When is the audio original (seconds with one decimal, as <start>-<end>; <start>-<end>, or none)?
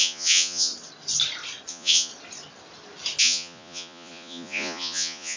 0.7-1.7; 2.1-3.2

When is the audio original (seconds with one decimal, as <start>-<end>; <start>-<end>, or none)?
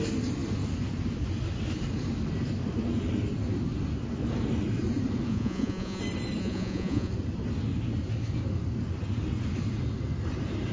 0.0-5.3; 6.0-6.4; 7.1-10.7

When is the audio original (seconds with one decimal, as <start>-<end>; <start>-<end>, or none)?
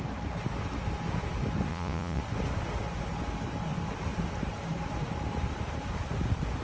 0.0-1.7; 2.2-6.6